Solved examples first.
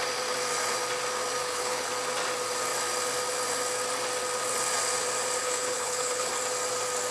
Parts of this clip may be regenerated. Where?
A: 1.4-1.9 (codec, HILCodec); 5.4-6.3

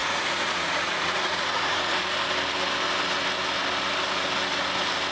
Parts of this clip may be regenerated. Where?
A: 0.0-2.0 (vocoder, Vocos)